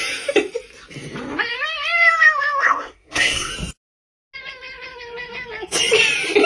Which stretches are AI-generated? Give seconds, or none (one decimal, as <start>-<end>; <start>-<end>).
2.6-3.5